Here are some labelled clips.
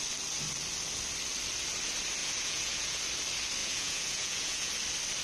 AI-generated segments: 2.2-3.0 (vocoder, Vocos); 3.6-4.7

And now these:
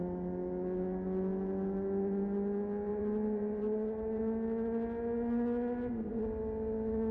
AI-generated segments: 2.9-4.2 (vocoder, Vocos)

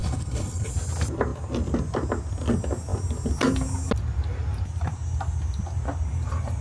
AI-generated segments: 0.0-0.7 (codec, HILCodec)

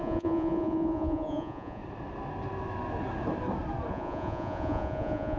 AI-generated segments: 0.0-1.8 (vocoder, Vocos); 3.9-5.4

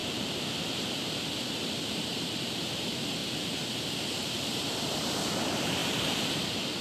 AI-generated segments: 0.0-3.2 (vocoder, BigVGAN v2); 4.6-6.8

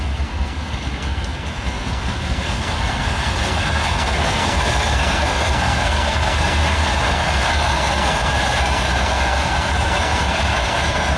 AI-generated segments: 0.0-11.2 (codec, SNAC)